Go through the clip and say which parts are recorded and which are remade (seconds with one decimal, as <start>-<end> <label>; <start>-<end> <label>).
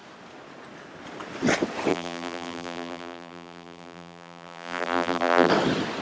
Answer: 0.0-1.9 recorded; 1.9-5.5 remade; 5.5-6.0 recorded